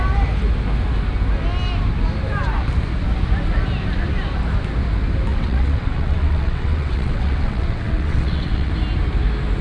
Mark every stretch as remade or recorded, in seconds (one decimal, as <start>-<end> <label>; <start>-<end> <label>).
0.0-5.3 recorded; 5.3-8.7 remade; 8.7-9.6 recorded